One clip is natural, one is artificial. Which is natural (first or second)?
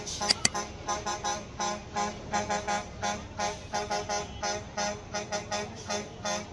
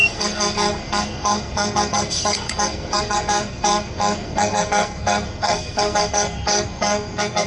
first